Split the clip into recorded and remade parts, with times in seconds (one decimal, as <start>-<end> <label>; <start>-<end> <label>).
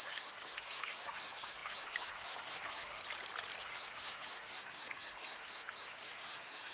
0.0-3.0 remade; 3.0-3.6 recorded; 3.6-6.7 remade